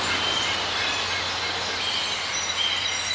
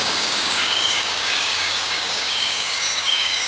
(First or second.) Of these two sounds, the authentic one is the first